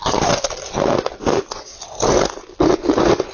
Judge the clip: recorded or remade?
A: recorded